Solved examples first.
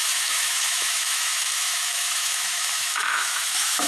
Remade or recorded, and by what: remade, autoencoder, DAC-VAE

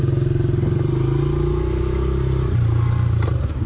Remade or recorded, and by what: recorded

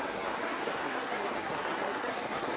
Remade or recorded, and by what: remade, codec, SNAC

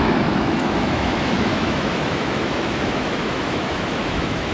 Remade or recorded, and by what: remade, autoencoder, DAC-VAE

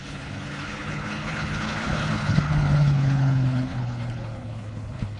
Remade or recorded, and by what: remade, codec, HILCodec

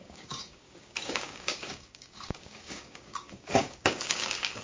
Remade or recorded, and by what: remade, codec, DAC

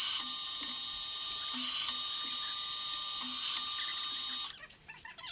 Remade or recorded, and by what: recorded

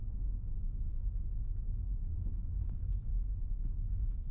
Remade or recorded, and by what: remade, autoencoder, DAC-VAE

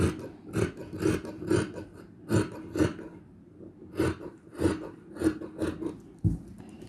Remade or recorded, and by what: recorded